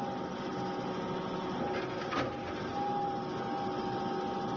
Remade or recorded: recorded